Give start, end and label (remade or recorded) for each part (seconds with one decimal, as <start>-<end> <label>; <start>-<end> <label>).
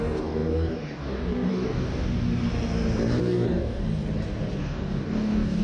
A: 0.0-1.9 remade; 1.9-3.2 recorded; 3.2-3.8 remade; 3.8-4.6 recorded; 4.6-5.6 remade